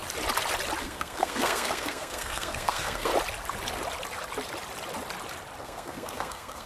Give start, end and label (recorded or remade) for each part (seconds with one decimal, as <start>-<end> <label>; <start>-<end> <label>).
0.0-0.8 recorded; 0.8-3.1 remade; 3.1-5.6 recorded; 5.6-6.7 remade